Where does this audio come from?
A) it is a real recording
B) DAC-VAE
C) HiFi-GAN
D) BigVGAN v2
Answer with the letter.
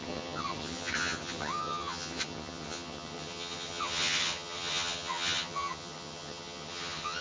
C